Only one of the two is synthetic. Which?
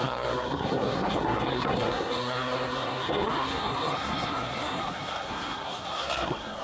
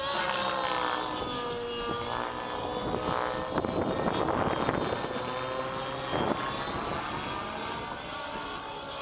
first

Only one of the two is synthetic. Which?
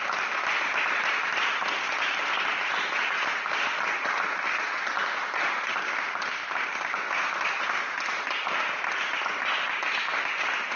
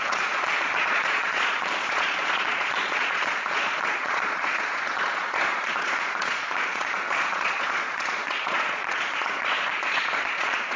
second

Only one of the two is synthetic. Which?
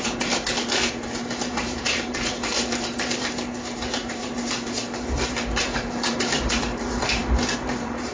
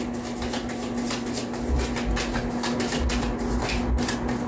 first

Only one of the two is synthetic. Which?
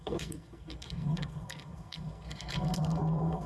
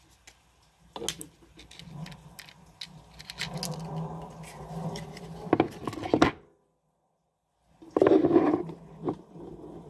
first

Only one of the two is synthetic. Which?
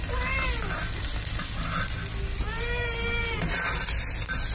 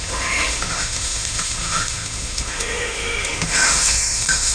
second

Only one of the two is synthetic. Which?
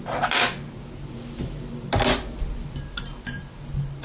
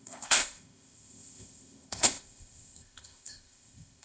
second